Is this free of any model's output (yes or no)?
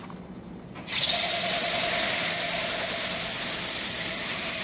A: yes